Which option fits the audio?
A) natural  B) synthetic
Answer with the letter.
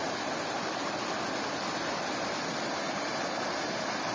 A